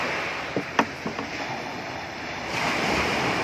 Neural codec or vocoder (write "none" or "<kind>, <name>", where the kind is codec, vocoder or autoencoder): none